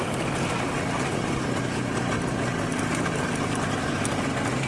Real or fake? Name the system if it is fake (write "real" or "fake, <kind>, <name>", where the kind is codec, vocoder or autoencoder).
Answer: real